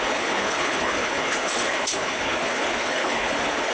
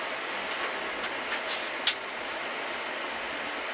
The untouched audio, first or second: second